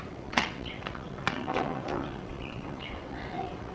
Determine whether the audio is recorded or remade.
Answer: remade